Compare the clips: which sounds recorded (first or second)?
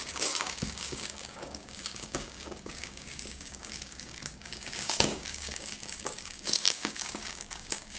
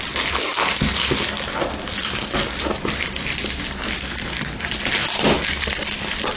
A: second